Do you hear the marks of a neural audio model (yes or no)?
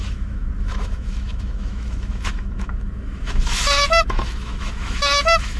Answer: yes